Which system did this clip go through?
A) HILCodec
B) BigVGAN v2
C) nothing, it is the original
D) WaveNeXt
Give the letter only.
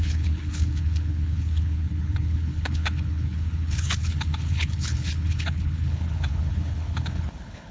A